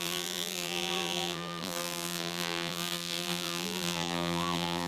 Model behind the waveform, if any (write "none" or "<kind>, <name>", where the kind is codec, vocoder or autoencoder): vocoder, BigVGAN v2